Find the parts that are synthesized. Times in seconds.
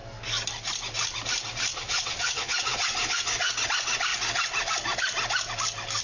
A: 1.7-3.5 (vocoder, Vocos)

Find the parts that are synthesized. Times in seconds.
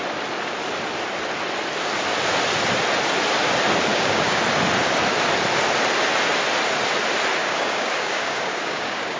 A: 3.9-4.4 (codec, DAC); 7.4-9.2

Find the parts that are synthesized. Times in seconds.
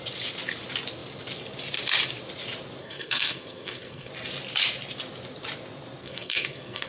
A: 2.8-4.1 (codec, SNAC); 6.0-6.9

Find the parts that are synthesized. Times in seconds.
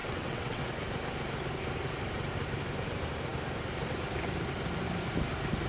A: 0.0-0.6 (vocoder, WaveNeXt)